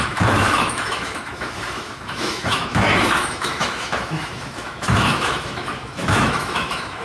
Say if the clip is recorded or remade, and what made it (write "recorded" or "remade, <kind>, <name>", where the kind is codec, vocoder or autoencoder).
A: remade, autoencoder, DAC-VAE